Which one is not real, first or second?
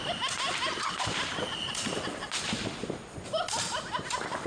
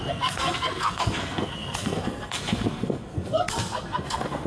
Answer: second